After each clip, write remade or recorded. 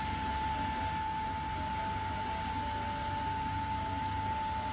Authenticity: recorded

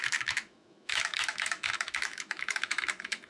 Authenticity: remade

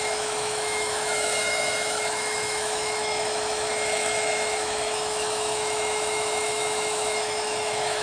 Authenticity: remade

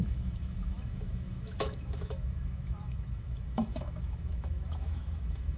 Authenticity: remade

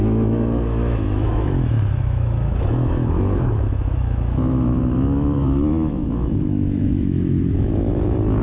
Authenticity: remade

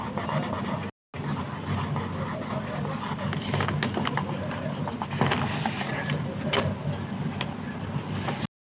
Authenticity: recorded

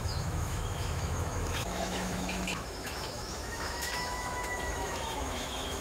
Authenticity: remade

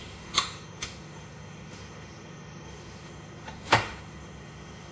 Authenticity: remade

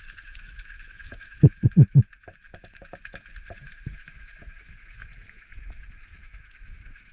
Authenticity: remade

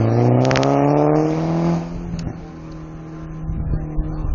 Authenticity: recorded